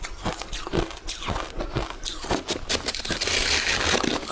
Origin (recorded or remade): recorded